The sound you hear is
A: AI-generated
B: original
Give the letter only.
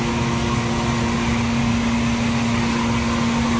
B